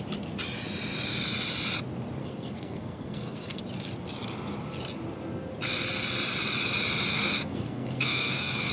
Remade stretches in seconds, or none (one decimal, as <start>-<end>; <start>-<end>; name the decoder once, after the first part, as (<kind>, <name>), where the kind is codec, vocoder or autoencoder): 2.2-3.6 (codec, SNAC); 7.1-8.7